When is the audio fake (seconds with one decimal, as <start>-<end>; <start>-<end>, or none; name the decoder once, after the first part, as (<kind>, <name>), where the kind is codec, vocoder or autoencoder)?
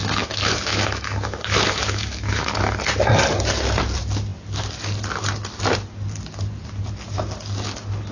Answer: 0.0-2.6 (autoencoder, DAC-VAE)